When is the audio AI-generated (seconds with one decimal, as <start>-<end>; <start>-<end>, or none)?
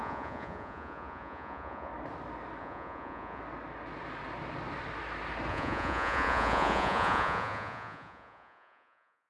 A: 0.0-1.9; 2.6-3.4; 5.5-9.3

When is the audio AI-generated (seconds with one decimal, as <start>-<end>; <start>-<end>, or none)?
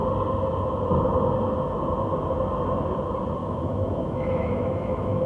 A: 3.4-5.3